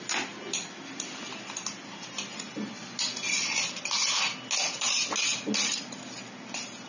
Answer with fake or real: real